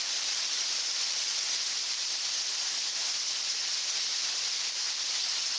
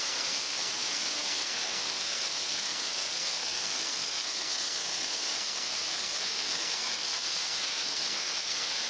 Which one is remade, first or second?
second